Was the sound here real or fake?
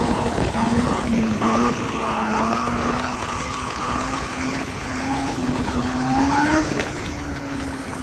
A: fake